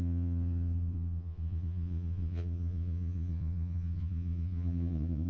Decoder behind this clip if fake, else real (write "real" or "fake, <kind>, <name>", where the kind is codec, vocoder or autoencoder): fake, vocoder, Vocos